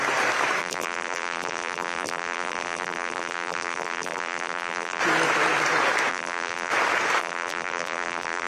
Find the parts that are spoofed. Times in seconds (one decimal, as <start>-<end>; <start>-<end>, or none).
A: 0.6-5.0; 6.1-6.7; 7.2-8.5